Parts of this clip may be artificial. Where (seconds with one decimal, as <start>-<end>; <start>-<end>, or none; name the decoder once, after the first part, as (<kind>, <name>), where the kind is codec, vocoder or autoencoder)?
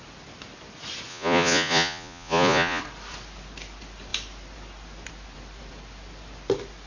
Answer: 1.1-2.8 (vocoder, Vocos)